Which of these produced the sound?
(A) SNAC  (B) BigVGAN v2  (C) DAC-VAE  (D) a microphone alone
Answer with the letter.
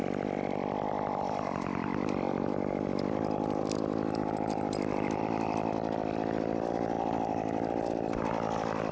D